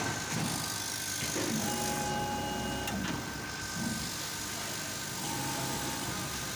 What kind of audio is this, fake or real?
real